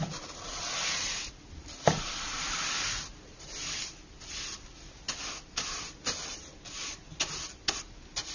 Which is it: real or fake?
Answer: real